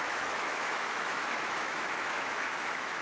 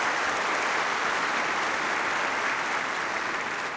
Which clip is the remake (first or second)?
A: first